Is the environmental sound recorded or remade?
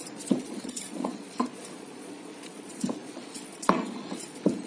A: remade